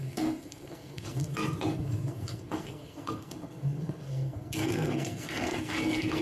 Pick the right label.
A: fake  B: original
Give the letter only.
A